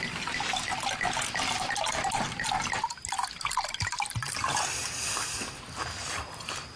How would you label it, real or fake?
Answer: real